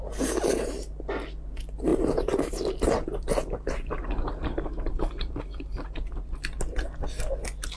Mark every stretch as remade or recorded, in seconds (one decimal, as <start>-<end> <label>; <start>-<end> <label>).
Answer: 0.0-1.9 recorded; 1.9-6.6 remade; 6.6-7.8 recorded